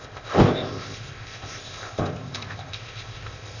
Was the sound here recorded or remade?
remade